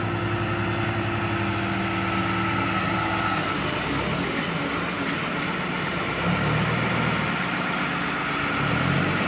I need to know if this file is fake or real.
real